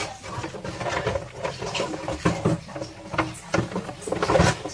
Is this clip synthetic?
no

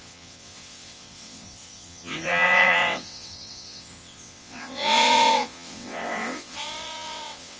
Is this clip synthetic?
yes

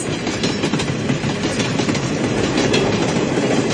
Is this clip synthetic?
yes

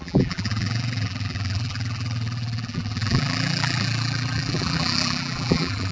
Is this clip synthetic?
yes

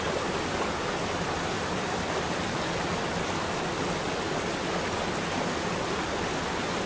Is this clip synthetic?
no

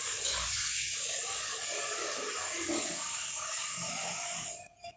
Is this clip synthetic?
yes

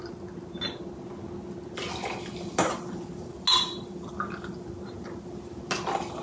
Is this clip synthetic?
no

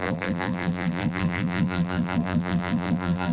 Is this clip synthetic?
yes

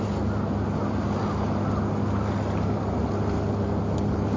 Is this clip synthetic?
no